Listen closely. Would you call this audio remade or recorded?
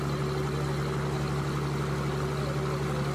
recorded